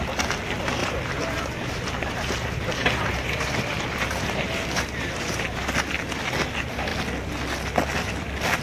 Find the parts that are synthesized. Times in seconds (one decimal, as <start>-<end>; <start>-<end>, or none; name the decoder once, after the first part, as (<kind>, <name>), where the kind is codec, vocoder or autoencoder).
0.8-5.7 (vocoder, BigVGAN v2)